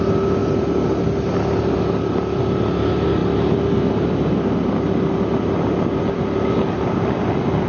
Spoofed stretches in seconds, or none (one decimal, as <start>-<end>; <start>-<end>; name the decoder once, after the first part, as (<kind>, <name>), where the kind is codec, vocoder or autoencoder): none